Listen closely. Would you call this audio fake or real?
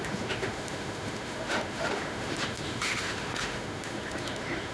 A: fake